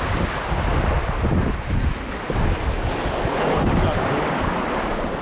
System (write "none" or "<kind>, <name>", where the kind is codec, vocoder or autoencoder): none